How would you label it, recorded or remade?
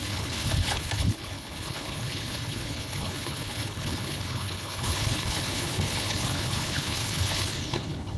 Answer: remade